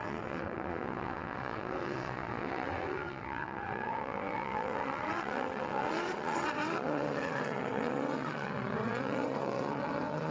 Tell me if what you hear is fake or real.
fake